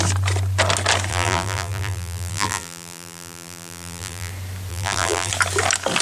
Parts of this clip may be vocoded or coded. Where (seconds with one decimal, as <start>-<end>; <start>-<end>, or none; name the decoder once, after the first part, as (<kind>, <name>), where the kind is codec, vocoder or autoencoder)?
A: 1.1-4.3 (vocoder, BigVGAN v2); 4.7-5.3